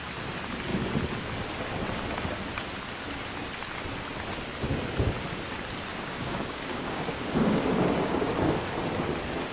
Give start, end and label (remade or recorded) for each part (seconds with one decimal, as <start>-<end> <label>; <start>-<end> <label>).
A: 0.0-5.9 recorded; 5.9-8.4 remade; 8.4-9.5 recorded